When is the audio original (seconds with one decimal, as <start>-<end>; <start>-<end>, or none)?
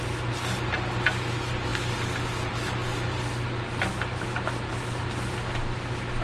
0.0-6.2